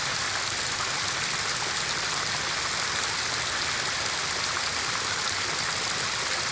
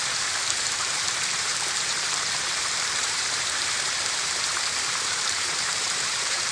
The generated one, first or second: second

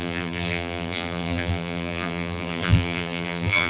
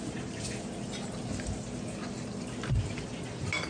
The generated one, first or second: first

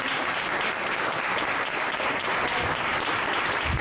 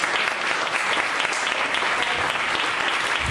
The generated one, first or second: first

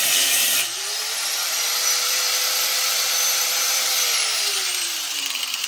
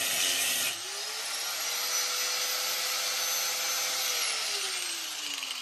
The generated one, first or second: first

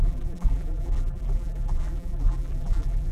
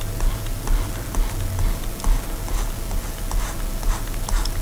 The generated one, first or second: first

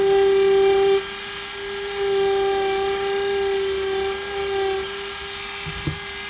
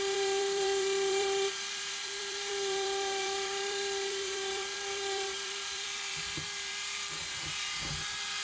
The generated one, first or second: second